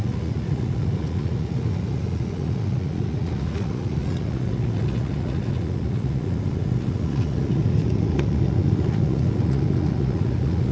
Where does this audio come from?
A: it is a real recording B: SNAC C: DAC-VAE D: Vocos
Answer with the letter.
D